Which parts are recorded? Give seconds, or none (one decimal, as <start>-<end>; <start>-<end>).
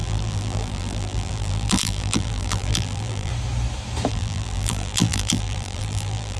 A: 3.3-4.1